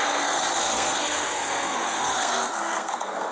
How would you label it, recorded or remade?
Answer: remade